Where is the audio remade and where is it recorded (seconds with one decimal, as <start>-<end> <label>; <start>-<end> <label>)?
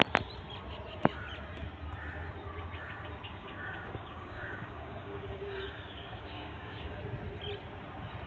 0.0-3.3 recorded; 3.3-7.0 remade; 7.0-8.3 recorded